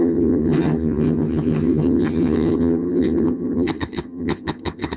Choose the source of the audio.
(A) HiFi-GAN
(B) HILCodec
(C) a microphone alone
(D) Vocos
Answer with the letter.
A